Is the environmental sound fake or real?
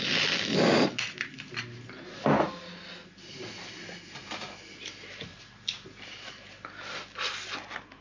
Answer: real